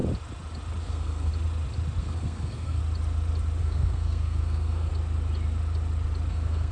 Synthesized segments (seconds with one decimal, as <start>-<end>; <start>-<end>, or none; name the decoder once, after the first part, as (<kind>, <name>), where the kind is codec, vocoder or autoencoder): 0.8-1.3 (codec, SNAC); 2.0-2.8; 3.6-4.9; 6.3-6.7